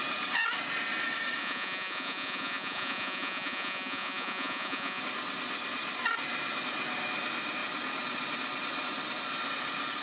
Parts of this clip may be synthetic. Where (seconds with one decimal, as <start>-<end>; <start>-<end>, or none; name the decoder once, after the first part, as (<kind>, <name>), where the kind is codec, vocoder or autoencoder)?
1.4-5.0 (vocoder, Vocos)